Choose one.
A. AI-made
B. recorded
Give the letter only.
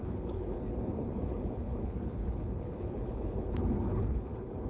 A